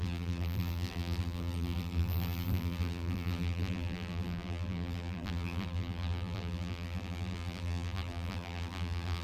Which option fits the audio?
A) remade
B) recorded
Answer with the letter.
A